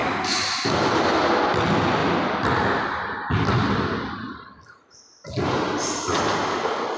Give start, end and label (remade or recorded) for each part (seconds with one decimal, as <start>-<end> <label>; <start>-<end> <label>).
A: 0.0-7.0 recorded